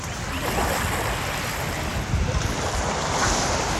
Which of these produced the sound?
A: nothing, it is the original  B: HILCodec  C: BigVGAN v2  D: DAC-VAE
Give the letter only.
A